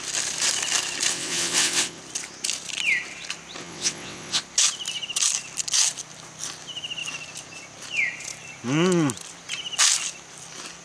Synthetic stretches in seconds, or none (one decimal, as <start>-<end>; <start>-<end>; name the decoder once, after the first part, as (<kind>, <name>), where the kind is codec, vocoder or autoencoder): 1.1-2.0 (vocoder, WaveNeXt); 3.6-4.4